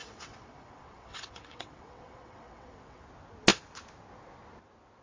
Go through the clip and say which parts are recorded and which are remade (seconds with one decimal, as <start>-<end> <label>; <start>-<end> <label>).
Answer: 0.0-3.0 remade; 3.0-5.0 recorded